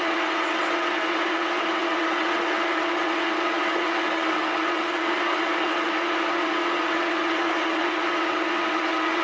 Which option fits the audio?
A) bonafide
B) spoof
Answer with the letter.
B